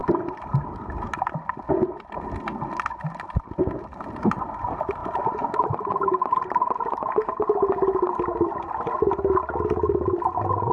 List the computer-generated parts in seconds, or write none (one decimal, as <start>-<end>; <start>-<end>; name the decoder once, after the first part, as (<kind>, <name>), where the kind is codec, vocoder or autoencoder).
0.0-2.0 (vocoder, BigVGAN v2)